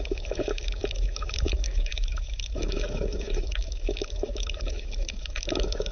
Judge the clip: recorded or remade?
remade